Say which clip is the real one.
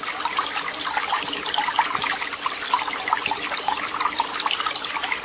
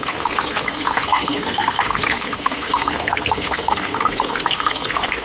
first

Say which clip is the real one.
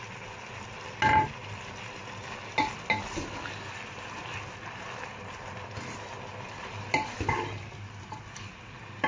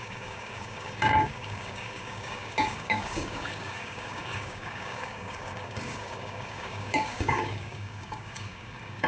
first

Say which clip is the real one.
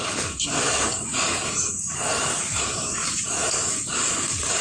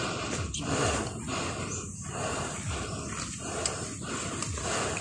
second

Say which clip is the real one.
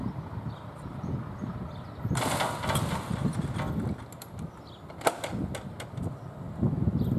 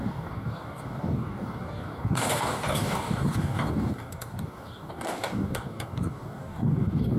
first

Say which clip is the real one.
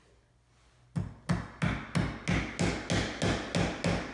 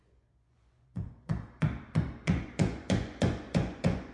first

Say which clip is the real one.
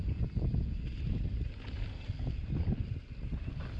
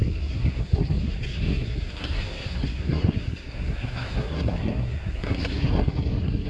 first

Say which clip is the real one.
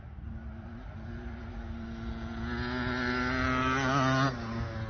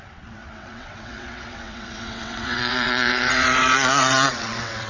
first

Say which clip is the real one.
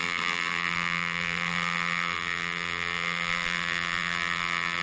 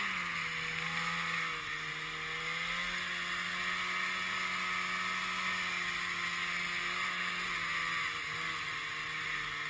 second